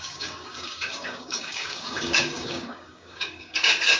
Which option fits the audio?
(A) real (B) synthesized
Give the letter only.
B